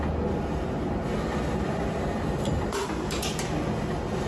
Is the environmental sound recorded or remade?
recorded